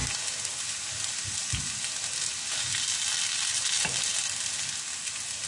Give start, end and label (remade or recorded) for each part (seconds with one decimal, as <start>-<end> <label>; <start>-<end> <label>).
0.0-5.5 recorded